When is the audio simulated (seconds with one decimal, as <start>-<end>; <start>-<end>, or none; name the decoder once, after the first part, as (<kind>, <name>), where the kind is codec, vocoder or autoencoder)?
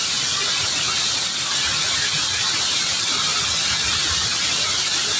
none